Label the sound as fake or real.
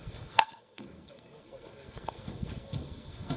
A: fake